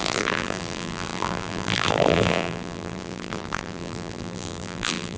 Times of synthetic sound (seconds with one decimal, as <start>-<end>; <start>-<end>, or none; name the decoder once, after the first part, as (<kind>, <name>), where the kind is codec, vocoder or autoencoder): 0.0-5.2 (vocoder, BigVGAN v2)

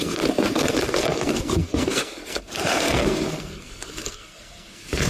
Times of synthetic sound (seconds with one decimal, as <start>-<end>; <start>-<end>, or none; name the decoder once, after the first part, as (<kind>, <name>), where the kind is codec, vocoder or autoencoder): 0.0-5.1 (codec, SNAC)

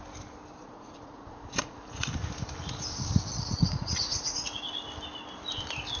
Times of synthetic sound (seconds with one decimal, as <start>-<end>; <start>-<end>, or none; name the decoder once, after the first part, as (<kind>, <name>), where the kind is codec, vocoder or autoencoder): 0.6-2.1 (vocoder, Vocos); 3.3-4.6

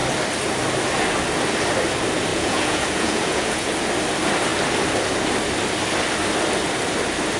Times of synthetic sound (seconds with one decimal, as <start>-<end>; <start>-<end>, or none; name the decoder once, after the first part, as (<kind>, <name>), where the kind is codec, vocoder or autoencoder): 2.3-3.7 (vocoder, Vocos)

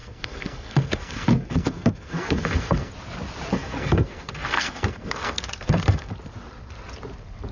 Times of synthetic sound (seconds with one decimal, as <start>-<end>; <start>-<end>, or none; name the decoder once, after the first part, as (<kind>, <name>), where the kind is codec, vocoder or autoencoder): 0.0-2.9 (codec, SNAC); 3.5-6.1

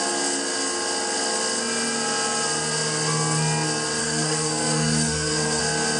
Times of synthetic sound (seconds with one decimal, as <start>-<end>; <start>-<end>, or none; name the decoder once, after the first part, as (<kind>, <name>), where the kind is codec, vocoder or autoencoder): 4.0-5.6 (codec, SNAC)